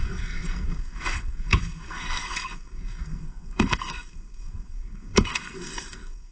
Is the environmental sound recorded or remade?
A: remade